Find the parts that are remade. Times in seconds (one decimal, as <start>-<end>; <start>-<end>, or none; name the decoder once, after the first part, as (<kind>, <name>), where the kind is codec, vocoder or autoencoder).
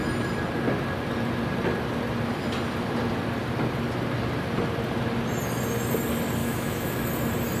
6.4-7.1 (autoencoder, DAC-VAE)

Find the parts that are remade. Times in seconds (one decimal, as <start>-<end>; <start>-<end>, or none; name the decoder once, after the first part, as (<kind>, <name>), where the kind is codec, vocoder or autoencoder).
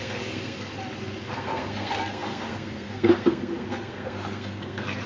0.0-0.7 (codec, SNAC); 1.2-5.1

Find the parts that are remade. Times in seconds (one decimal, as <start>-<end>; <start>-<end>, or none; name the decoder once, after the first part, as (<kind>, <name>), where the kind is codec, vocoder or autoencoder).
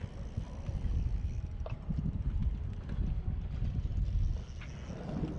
none